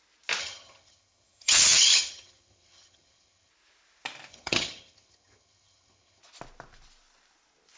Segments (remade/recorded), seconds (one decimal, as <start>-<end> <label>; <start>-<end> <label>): 0.0-0.4 recorded; 0.4-3.5 remade; 3.5-4.3 recorded; 4.3-6.2 remade; 6.2-7.8 recorded